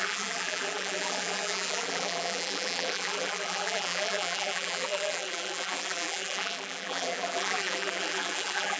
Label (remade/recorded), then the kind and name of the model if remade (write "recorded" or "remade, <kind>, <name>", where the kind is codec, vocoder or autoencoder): remade, vocoder, BigVGAN v2